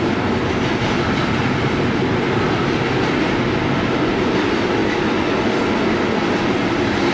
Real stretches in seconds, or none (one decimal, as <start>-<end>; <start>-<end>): 0.0-7.1